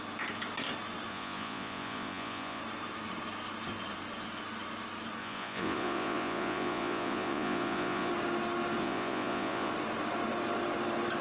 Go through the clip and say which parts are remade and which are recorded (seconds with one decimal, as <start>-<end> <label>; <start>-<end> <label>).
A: 0.0-1.1 recorded; 1.1-2.6 remade; 2.6-5.2 recorded; 5.2-8.1 remade; 8.1-8.8 recorded; 8.8-9.7 remade; 9.7-11.2 recorded